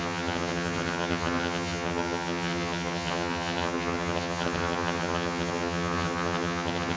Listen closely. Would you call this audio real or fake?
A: fake